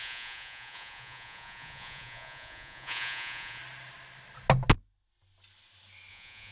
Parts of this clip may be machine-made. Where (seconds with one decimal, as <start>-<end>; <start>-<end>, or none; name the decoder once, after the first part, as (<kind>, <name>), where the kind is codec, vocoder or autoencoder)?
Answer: 0.0-3.6 (vocoder, Vocos); 6.1-6.5